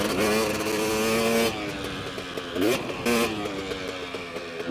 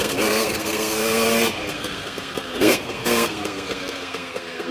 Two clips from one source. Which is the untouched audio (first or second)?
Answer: first